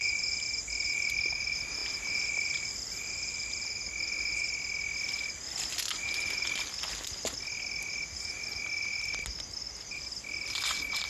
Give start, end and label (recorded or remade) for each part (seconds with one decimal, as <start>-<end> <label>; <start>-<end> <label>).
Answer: 0.0-11.1 recorded